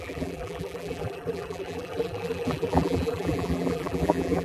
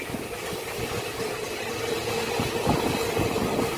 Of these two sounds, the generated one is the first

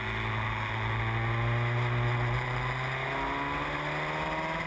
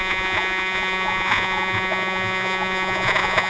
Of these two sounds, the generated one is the second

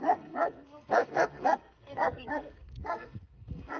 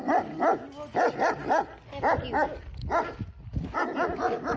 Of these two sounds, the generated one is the first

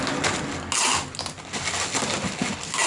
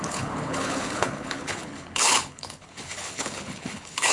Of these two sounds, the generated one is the second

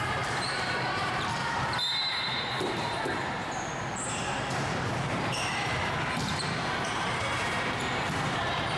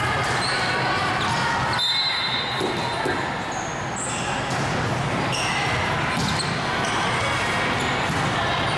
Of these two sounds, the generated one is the first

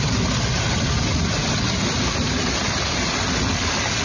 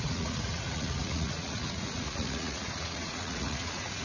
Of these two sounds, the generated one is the second